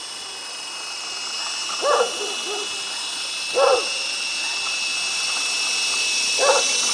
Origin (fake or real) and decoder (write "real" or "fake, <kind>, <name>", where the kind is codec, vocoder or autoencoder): real